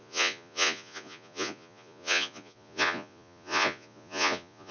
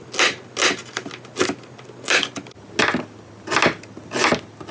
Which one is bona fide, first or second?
second